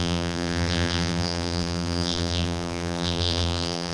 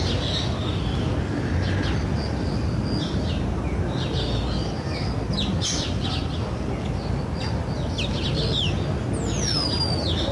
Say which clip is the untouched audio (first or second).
second